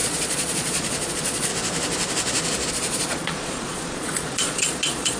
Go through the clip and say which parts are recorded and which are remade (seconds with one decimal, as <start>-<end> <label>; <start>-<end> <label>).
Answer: 0.0-1.5 remade; 1.5-2.7 recorded; 2.7-5.2 remade